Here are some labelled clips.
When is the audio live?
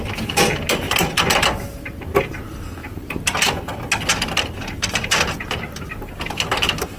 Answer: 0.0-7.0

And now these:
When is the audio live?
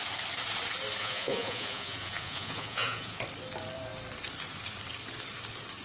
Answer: 0.0-1.0; 3.2-5.8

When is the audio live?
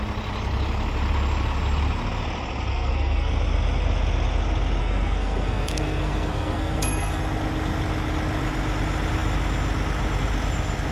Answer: 0.0-2.7; 3.3-4.8; 7.2-10.9